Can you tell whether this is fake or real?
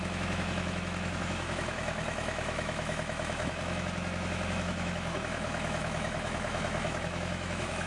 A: fake